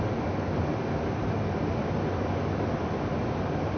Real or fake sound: real